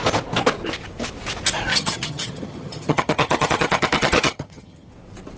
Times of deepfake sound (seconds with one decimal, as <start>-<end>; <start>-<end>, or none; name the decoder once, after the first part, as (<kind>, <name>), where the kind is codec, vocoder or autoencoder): 1.7-4.9 (vocoder, HiFi-GAN)